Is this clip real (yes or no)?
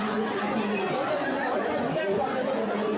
no